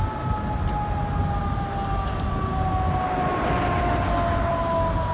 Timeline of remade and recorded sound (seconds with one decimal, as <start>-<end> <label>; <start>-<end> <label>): 0.0-5.1 recorded